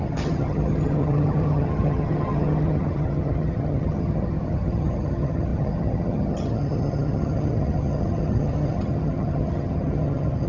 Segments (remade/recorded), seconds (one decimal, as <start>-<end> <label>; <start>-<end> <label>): 0.0-10.5 remade